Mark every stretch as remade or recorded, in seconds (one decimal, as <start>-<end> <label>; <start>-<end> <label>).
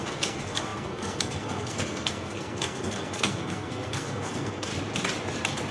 0.0-4.7 remade; 4.7-5.7 recorded